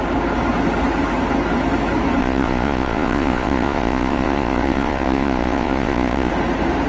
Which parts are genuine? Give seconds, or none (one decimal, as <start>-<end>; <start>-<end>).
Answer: 0.0-2.2; 6.3-6.9